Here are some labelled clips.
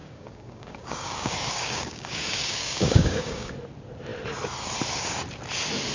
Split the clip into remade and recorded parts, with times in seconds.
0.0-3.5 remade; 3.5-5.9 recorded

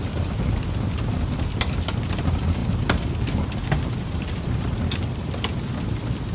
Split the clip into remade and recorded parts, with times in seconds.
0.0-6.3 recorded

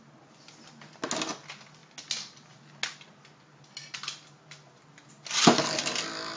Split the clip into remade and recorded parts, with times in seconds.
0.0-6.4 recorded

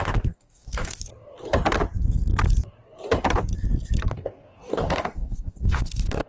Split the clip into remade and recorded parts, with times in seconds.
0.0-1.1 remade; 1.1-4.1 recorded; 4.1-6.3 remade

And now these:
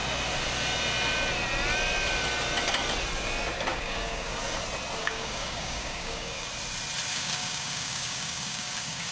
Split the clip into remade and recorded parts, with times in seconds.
0.0-3.7 recorded; 3.7-4.4 remade; 4.4-5.0 recorded; 5.0-6.5 remade; 6.5-7.1 recorded; 7.1-9.1 remade

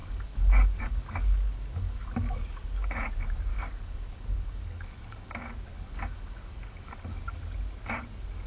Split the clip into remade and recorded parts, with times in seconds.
0.0-3.1 remade; 3.1-3.5 recorded; 3.5-5.3 remade; 5.3-5.7 recorded; 5.7-7.4 remade; 7.4-8.5 recorded

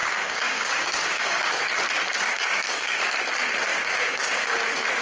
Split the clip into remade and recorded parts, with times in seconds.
0.0-1.7 remade; 1.7-2.2 recorded; 2.2-3.0 remade; 3.0-3.7 recorded; 3.7-4.5 remade; 4.5-5.0 recorded